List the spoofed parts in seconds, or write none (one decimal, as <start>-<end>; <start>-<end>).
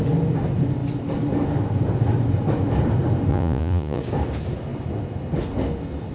3.3-4.0